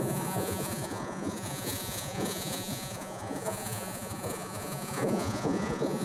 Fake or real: fake